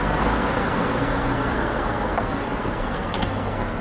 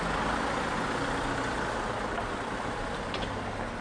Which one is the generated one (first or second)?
first